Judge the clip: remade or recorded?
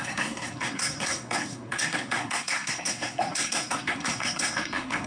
remade